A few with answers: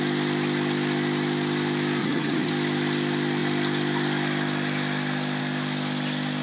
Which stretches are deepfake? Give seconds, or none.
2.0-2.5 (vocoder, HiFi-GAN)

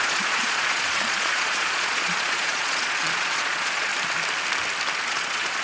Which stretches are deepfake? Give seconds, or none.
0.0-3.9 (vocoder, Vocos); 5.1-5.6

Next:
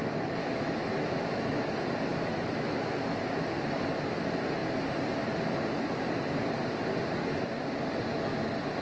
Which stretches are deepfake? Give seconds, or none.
0.4-1.7 (autoencoder, DAC-VAE); 2.1-3.2

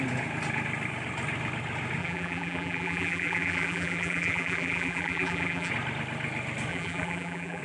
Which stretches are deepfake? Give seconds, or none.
2.0-5.7 (vocoder, BigVGAN v2); 6.7-7.6

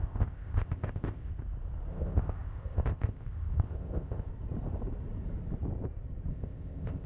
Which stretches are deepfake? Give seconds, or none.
0.0-1.3 (codec, ZipCodec); 1.9-4.3; 6.3-7.1

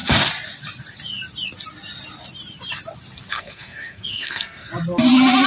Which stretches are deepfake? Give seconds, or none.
3.3-4.7 (codec, SNAC)

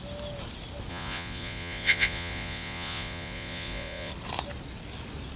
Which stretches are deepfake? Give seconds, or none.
0.9-4.1 (vocoder, Vocos)